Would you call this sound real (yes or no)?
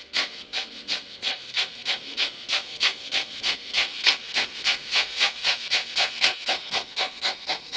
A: no